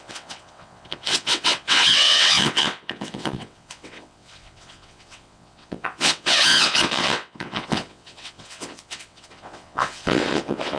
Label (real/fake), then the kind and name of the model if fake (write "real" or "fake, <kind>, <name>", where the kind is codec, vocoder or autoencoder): fake, vocoder, WaveNeXt